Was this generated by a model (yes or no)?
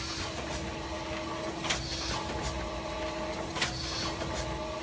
no